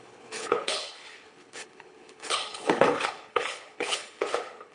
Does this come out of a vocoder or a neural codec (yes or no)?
yes